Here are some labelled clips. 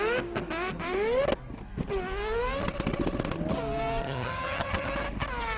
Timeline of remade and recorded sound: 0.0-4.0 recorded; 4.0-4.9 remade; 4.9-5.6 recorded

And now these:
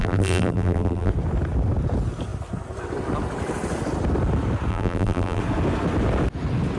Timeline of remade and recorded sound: 0.0-1.1 remade; 1.1-4.7 recorded; 4.7-5.4 remade; 5.4-6.8 recorded

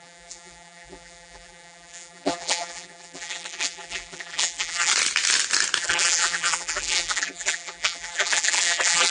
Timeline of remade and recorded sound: 0.0-4.9 remade; 4.9-5.8 recorded; 5.8-9.1 remade